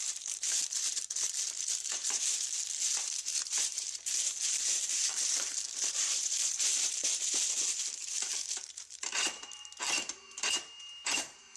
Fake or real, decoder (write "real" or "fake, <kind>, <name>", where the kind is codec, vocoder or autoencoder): fake, vocoder, BigVGAN v2